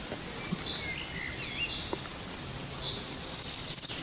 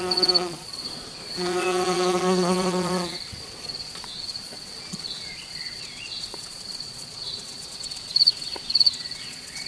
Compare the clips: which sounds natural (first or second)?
first